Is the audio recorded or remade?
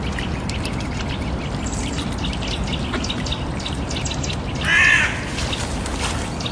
recorded